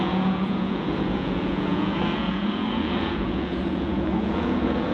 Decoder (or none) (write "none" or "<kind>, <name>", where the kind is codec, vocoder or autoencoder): vocoder, Vocos